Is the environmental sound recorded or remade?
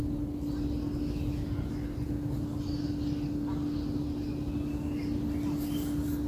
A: recorded